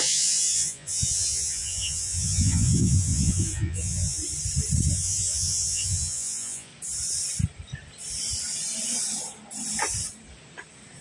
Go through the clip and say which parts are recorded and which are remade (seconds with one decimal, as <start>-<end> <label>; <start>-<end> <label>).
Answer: 0.0-4.2 remade; 4.2-4.9 recorded; 4.9-6.7 remade; 6.7-11.0 recorded